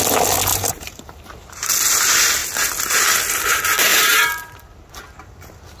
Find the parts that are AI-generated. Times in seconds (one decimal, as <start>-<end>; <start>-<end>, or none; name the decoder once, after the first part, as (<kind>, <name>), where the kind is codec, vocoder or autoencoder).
0.5-1.7 (vocoder, BigVGAN v2); 3.9-4.9